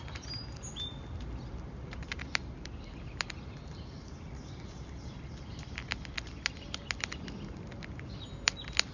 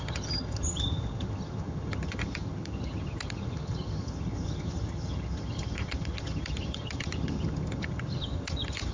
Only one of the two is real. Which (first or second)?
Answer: first